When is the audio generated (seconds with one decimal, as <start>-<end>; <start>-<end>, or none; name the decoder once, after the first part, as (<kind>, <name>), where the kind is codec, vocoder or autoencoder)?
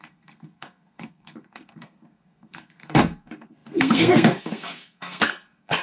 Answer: 0.0-5.8 (codec, SNAC)